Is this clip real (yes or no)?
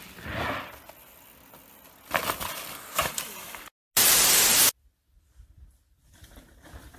yes